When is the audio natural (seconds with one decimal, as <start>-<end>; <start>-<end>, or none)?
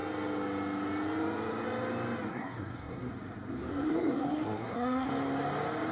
0.0-2.3; 3.1-3.7; 5.1-5.9